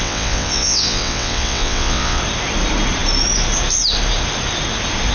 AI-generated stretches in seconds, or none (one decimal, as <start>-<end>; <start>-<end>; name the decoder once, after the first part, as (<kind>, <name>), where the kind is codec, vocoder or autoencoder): 0.0-2.2 (vocoder, WaveNeXt)